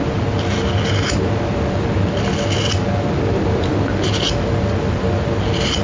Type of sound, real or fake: real